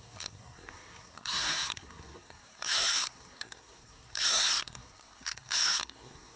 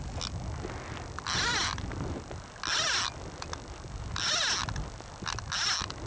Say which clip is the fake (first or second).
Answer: first